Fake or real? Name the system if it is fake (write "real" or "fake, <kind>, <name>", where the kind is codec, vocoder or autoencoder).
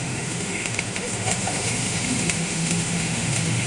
fake, autoencoder, DAC-VAE